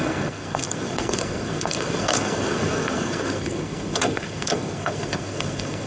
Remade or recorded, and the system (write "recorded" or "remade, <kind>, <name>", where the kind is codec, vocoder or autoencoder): remade, codec, SNAC